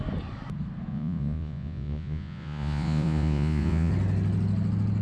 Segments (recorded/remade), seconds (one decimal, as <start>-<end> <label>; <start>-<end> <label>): 0.0-0.9 recorded; 0.9-3.9 remade; 3.9-5.0 recorded